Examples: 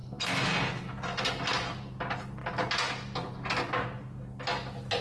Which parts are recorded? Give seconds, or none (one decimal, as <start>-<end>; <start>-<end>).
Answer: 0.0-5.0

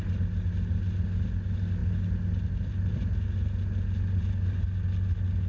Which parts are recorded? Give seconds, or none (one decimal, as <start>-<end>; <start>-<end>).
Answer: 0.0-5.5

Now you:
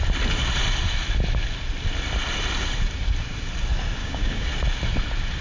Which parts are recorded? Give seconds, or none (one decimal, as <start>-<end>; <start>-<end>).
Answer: 0.0-4.0; 4.5-5.4

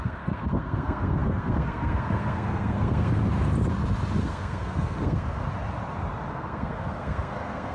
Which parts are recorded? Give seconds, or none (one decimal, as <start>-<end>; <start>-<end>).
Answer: 3.2-4.2; 5.4-6.3

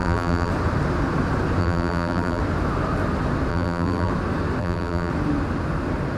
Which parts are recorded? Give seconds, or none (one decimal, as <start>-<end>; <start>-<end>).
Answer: 0.5-1.6; 2.4-3.5; 4.1-4.6; 5.1-6.2

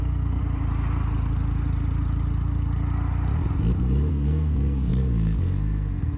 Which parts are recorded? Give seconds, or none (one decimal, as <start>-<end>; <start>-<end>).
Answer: 0.4-4.1